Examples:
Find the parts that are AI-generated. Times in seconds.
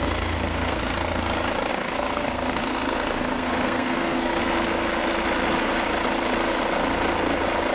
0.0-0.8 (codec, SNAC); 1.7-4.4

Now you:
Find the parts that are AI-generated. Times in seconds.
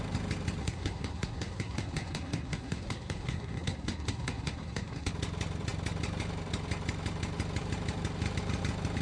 0.6-5.1 (codec, SNAC)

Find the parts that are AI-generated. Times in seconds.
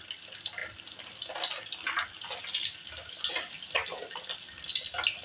none